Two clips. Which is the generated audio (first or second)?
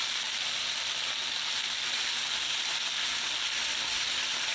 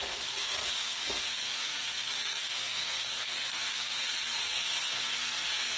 second